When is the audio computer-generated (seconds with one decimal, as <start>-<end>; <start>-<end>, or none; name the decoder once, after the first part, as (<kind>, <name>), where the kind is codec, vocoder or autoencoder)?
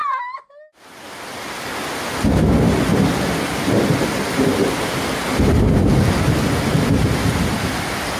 none